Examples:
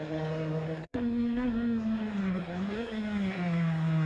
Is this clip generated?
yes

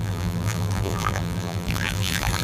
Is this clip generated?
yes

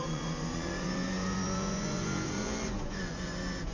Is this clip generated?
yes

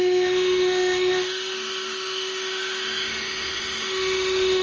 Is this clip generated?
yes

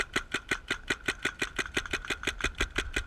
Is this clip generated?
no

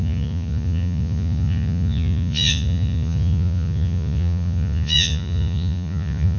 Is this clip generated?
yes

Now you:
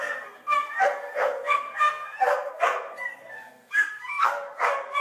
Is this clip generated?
yes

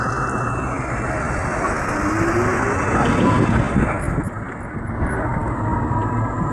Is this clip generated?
no